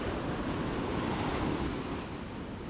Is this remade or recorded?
recorded